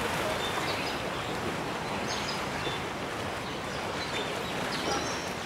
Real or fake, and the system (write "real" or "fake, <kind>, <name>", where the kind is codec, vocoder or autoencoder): real